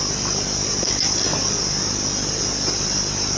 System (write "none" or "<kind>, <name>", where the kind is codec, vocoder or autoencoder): none